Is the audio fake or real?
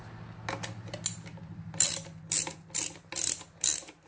real